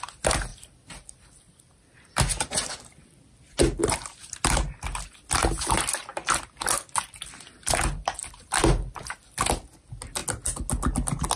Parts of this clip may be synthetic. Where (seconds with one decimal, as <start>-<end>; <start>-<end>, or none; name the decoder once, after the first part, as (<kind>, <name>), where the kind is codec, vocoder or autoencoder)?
0.5-3.2 (vocoder, BigVGAN v2); 8.2-9.1